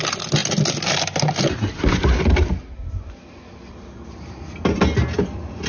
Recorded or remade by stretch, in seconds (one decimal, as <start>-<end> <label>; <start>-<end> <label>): 0.0-5.7 recorded